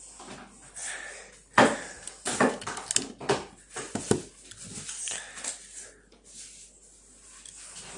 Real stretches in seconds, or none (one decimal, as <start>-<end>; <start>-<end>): 0.0-8.0